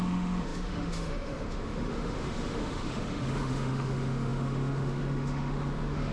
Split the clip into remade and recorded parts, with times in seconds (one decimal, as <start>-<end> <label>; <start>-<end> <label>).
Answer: 0.0-6.1 remade